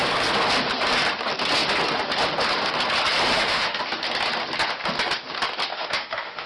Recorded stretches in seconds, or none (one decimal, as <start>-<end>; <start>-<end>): 0.0-3.3; 3.8-5.7